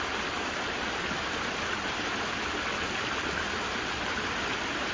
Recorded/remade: recorded